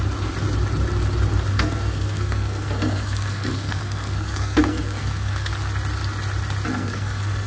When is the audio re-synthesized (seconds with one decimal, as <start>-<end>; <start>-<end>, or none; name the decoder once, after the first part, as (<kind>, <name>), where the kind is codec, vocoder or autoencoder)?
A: 1.5-5.5 (codec, SNAC); 6.7-7.5